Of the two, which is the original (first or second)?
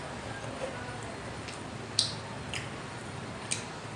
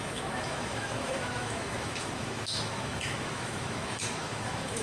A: first